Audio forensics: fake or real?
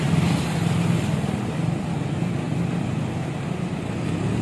real